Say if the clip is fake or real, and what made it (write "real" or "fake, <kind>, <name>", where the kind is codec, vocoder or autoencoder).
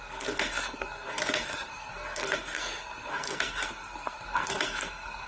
fake, codec, SNAC